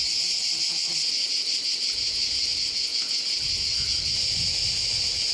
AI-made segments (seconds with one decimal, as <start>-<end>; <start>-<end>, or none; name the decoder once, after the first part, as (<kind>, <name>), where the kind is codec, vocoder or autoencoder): none